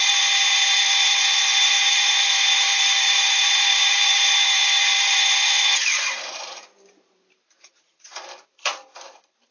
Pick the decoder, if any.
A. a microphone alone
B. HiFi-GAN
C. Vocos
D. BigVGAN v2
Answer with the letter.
D